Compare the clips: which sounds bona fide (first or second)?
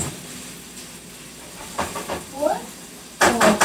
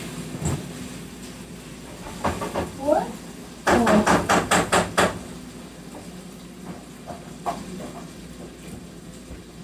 second